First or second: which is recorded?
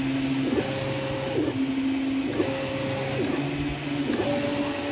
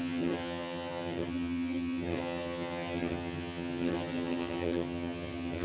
first